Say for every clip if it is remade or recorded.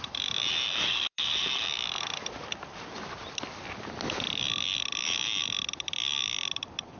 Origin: remade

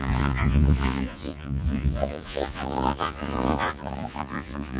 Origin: remade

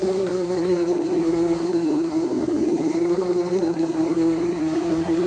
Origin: remade